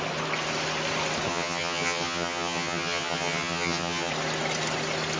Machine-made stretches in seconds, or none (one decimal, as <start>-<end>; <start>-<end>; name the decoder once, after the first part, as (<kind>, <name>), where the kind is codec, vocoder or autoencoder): 1.3-4.1 (vocoder, HiFi-GAN)